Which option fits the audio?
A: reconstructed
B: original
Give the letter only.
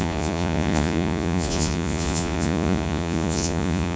A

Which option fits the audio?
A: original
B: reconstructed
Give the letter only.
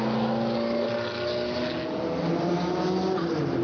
A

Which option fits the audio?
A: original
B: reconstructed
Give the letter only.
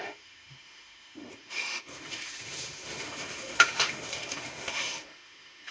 B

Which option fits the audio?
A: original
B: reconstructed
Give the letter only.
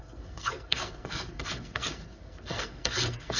B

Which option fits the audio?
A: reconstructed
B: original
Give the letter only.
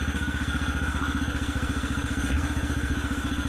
A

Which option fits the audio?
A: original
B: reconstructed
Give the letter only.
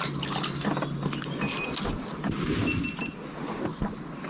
A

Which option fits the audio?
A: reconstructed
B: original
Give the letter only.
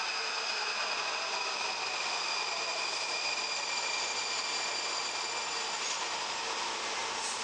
B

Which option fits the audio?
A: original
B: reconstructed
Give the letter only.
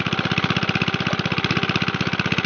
A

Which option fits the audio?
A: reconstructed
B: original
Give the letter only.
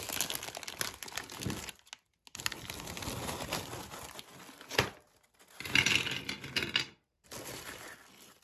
B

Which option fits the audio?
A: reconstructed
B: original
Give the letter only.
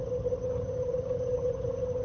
A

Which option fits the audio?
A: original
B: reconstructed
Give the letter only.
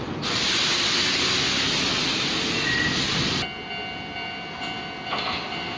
A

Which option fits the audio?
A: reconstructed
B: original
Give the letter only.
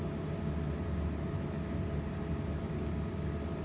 B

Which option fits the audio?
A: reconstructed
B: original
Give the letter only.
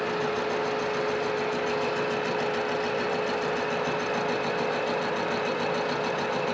B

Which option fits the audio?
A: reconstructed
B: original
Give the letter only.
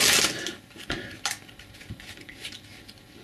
B